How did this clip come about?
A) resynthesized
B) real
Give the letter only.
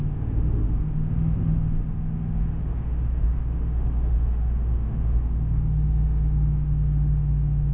A